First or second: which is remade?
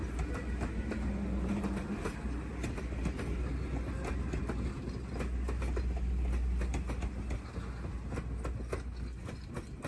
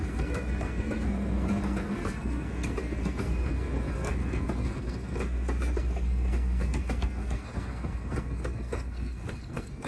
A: second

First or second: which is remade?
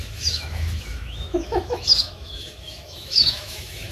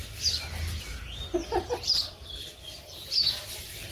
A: first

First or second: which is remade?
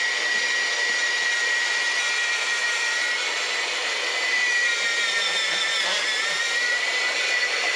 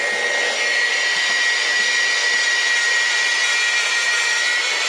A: first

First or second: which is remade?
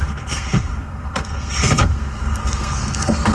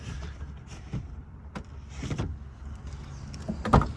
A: first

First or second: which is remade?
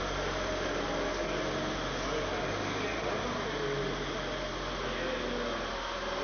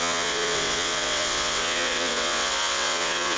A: second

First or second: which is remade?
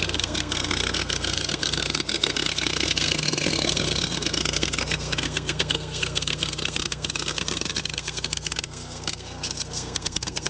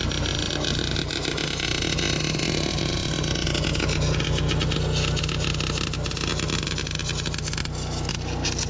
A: first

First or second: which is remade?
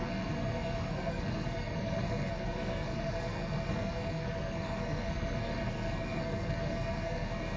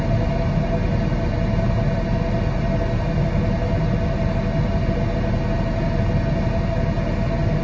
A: first